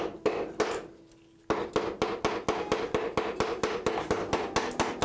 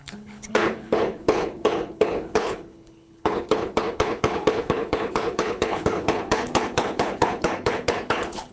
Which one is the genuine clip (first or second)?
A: first